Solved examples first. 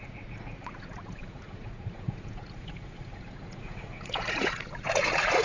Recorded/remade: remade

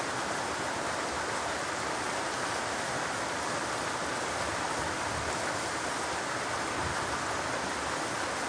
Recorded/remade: recorded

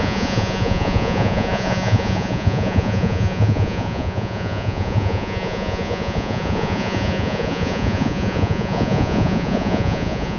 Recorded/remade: remade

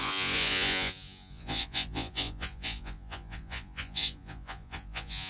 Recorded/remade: remade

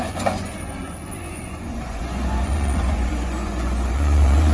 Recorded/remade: remade